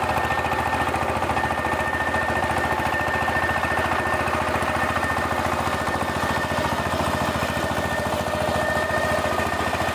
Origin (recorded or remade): recorded